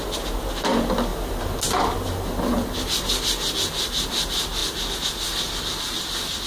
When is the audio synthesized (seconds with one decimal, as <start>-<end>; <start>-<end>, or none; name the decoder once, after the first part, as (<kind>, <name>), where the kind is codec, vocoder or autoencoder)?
none